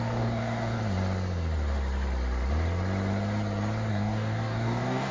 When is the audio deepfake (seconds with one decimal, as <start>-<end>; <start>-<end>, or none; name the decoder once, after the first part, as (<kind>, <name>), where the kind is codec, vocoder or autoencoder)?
0.0-0.8 (codec, DAC); 3.9-5.1